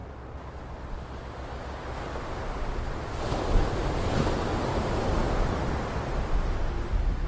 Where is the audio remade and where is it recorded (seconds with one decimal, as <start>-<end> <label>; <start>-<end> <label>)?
0.0-3.8 recorded; 3.8-4.7 remade; 4.7-7.3 recorded